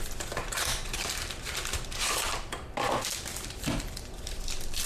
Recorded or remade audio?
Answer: recorded